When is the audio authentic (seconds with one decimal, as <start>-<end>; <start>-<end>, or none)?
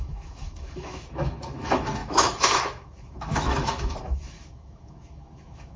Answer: none